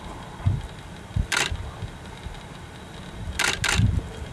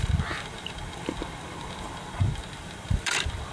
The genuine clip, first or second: first